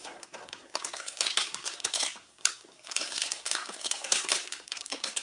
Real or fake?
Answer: fake